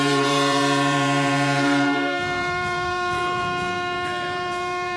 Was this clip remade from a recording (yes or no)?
yes